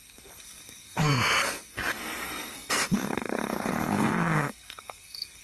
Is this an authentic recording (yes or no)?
no